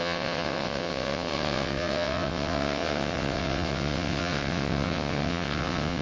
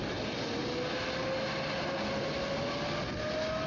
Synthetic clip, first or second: first